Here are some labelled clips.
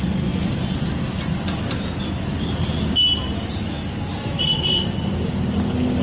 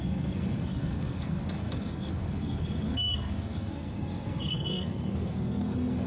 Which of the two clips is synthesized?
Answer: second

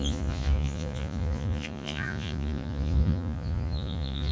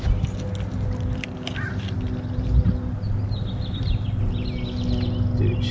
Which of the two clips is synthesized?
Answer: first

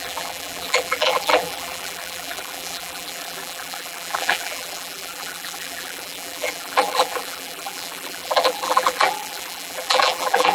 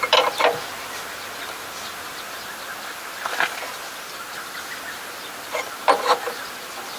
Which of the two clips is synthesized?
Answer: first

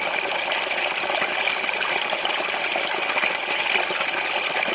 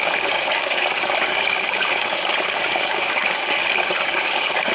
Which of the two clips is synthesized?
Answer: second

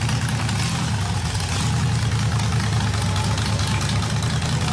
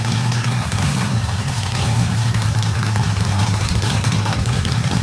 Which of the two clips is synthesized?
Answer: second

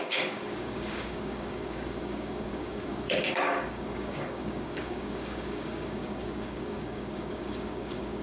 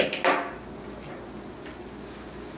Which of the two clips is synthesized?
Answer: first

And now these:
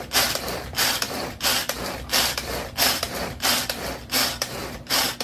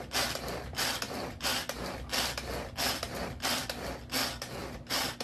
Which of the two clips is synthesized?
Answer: first